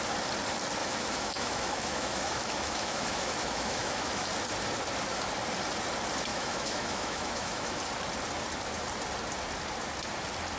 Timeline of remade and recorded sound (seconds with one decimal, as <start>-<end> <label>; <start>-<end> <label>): 0.0-0.8 recorded; 0.8-4.3 remade; 4.3-6.3 recorded; 6.3-7.8 remade; 7.8-10.6 recorded

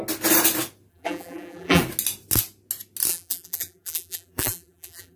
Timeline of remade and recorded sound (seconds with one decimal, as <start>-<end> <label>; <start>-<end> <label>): 0.0-0.9 recorded; 0.9-1.8 remade; 1.8-3.1 recorded; 3.1-5.2 remade

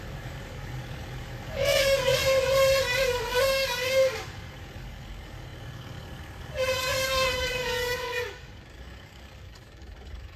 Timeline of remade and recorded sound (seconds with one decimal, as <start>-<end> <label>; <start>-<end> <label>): 0.0-2.1 remade; 2.1-2.8 recorded; 2.8-10.4 remade

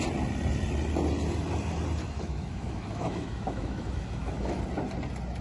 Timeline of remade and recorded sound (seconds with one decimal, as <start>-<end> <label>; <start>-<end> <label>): 0.0-2.0 recorded; 2.0-4.6 remade; 4.6-5.4 recorded

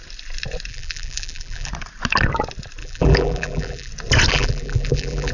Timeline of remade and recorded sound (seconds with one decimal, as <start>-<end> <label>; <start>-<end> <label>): 0.0-0.7 recorded; 0.7-1.7 remade; 1.7-2.8 recorded; 2.8-3.9 remade; 3.9-4.3 recorded; 4.3-5.3 remade

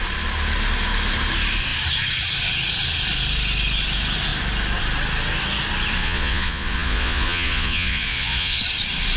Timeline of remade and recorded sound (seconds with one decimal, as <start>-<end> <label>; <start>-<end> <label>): 0.0-6.0 recorded; 6.0-8.6 remade; 8.6-9.2 recorded